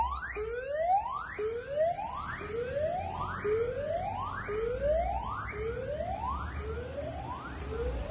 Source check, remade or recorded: recorded